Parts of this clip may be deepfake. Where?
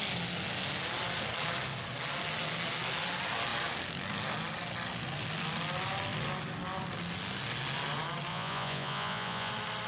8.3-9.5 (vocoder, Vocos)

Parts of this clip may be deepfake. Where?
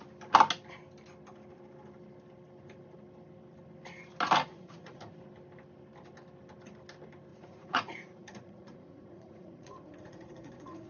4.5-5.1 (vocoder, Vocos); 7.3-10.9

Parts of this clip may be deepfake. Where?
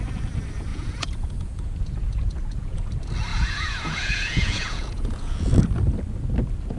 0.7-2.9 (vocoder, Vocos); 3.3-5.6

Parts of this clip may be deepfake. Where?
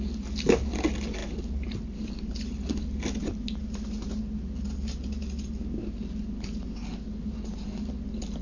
none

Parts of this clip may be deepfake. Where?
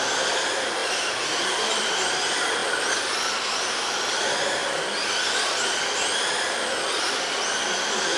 none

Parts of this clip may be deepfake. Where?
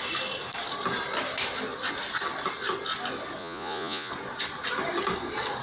3.4-4.1 (vocoder, Vocos)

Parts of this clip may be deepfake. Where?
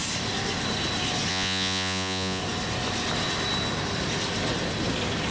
1.3-2.4 (vocoder, Vocos)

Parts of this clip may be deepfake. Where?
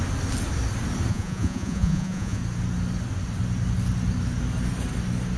1.1-2.4 (vocoder, Vocos)